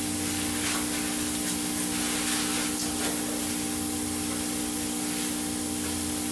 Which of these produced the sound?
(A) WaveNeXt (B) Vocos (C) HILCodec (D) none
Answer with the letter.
D